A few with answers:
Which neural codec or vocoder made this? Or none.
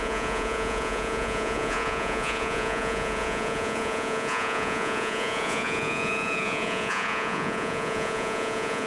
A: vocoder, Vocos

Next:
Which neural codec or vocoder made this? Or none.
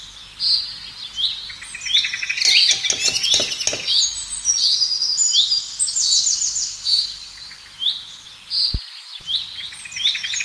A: none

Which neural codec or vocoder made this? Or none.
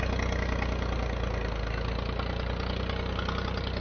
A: none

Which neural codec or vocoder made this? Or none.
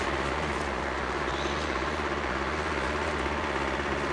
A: vocoder, Vocos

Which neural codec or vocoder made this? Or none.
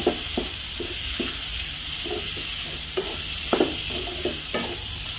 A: none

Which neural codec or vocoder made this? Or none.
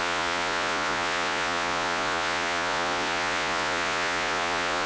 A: vocoder, Vocos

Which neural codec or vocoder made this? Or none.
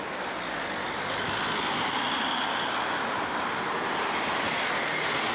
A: none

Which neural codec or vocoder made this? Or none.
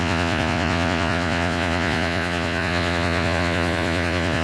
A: vocoder, Vocos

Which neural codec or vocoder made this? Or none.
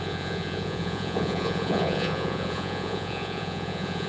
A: vocoder, Vocos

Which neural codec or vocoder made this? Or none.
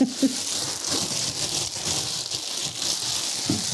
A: none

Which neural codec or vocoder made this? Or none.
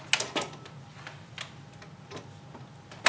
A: none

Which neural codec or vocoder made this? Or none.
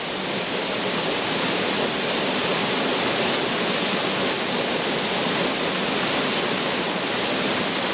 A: none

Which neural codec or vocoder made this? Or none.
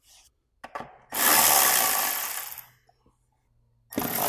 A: none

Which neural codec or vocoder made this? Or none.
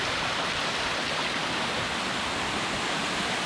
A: none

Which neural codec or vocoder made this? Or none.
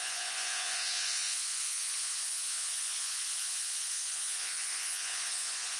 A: vocoder, Vocos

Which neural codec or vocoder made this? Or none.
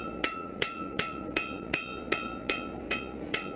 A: vocoder, Vocos